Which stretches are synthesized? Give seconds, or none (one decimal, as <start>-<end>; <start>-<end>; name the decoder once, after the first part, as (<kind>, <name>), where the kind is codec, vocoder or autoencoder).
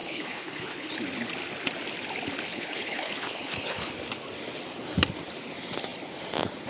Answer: 0.0-0.9 (codec, HILCodec); 2.5-3.9